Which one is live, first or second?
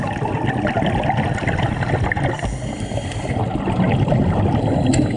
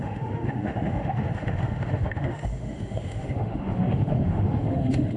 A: first